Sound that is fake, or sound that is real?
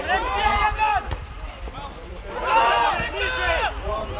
real